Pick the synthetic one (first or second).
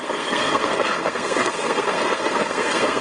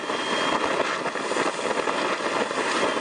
first